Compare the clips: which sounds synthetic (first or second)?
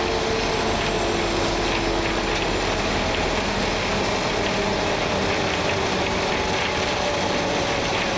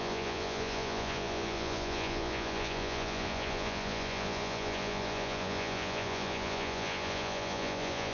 second